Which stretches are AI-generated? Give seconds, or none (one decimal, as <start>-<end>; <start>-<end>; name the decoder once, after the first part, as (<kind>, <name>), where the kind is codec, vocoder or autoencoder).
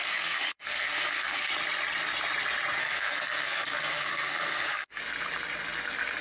0.0-1.5 (codec, SNAC); 2.8-5.0